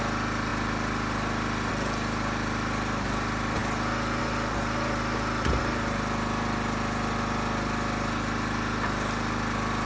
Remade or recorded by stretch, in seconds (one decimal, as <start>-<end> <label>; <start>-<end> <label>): 0.0-9.9 recorded